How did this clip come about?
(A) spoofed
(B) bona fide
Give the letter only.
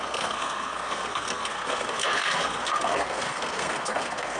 A